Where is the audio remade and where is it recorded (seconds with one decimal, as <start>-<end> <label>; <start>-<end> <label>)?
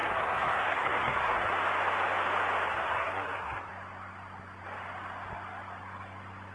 0.0-1.5 remade; 1.5-2.7 recorded; 2.7-3.7 remade; 3.7-6.5 recorded